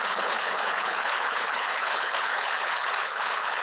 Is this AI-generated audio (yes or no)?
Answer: yes